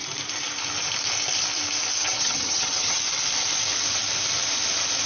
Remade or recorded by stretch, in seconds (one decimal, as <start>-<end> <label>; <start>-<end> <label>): 0.0-2.0 recorded; 2.0-3.0 remade; 3.0-5.1 recorded